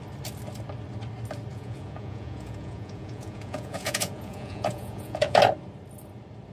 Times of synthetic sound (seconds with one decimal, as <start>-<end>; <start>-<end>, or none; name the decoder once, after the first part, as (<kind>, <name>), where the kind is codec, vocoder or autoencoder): 1.5-5.4 (vocoder, Vocos)